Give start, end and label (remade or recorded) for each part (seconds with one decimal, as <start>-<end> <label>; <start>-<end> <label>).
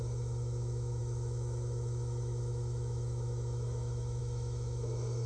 0.0-5.3 remade